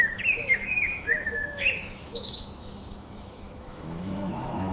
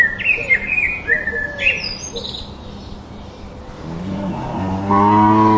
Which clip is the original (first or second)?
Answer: second